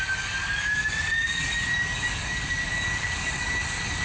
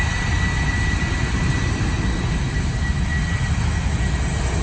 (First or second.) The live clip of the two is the second